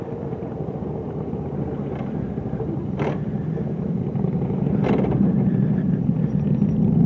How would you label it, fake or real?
fake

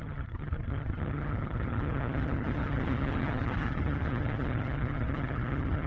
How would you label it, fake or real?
fake